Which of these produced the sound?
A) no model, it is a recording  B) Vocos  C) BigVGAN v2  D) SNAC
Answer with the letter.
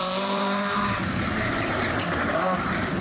C